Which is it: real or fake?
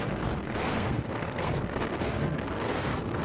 fake